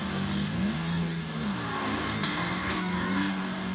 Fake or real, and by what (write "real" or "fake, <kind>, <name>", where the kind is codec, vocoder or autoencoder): fake, codec, DAC